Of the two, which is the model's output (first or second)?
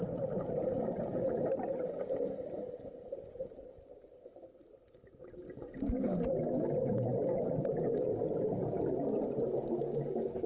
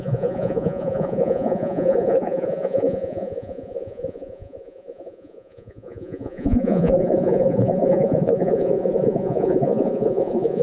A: second